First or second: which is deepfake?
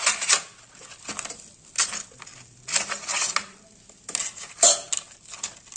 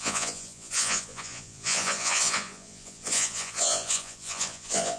second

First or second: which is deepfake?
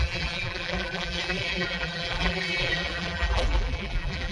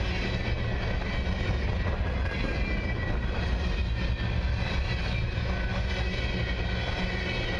first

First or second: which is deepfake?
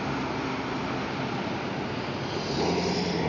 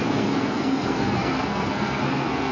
second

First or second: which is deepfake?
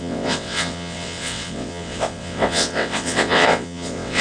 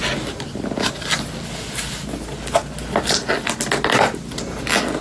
first